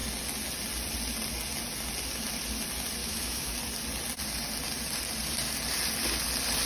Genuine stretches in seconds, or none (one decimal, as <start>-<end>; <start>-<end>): 0.0-3.0; 3.5-6.7